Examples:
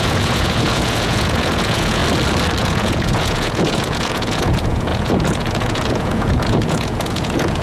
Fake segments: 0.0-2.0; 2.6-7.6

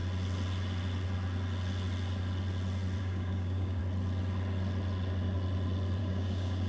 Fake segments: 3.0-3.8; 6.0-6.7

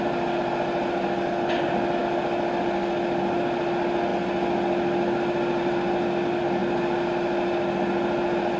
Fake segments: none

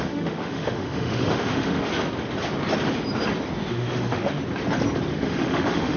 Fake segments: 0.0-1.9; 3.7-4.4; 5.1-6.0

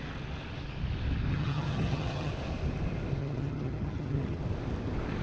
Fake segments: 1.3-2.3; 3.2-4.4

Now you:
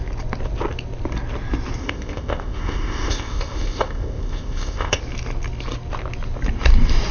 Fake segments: 1.8-5.0

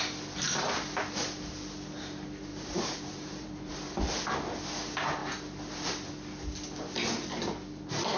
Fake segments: 2.5-3.5

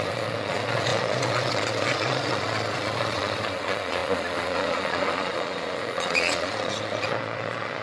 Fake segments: 0.0-7.8